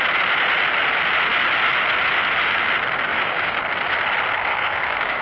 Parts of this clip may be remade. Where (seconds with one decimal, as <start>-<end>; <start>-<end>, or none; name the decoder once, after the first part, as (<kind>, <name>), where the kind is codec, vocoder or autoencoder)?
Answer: 3.1-3.6 (codec, DAC); 4.5-5.2